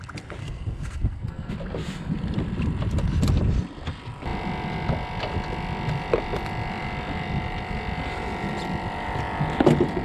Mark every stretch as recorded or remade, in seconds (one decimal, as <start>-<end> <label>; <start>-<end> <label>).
0.0-0.4 recorded; 0.4-1.5 remade; 1.5-10.0 recorded